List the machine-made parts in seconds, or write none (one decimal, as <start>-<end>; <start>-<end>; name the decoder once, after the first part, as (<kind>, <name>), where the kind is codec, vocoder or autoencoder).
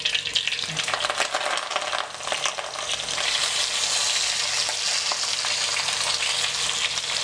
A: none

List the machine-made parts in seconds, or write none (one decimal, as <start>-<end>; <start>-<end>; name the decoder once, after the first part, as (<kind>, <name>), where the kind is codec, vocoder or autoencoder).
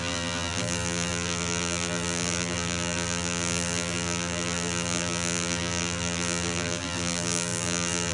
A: 0.0-8.1 (vocoder, BigVGAN v2)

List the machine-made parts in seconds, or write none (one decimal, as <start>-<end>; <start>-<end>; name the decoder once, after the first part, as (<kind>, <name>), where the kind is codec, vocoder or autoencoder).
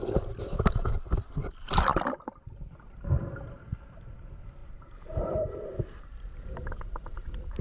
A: 4.6-7.6 (vocoder, BigVGAN v2)